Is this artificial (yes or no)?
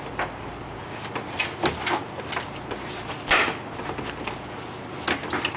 no